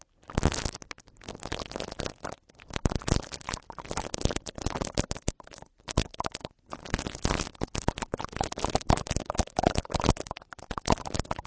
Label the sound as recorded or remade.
recorded